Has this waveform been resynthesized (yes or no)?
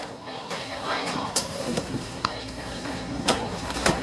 yes